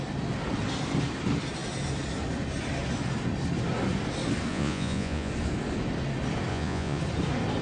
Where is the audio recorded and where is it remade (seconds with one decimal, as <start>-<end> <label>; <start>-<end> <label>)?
0.0-4.5 recorded; 4.5-5.3 remade; 5.3-6.5 recorded; 6.5-7.0 remade; 7.0-7.6 recorded